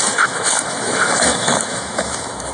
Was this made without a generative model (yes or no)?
no